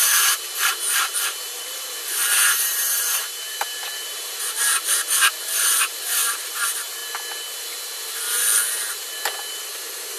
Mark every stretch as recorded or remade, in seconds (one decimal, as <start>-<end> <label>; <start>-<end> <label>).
0.0-7.0 remade; 7.0-9.5 recorded; 9.5-10.2 remade